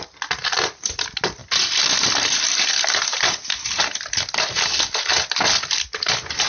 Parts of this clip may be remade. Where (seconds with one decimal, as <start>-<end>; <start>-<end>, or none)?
none